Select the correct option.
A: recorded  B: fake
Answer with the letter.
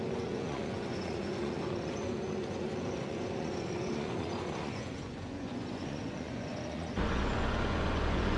B